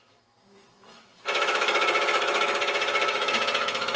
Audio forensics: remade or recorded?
remade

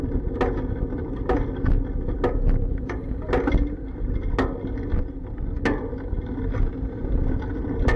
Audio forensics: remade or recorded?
recorded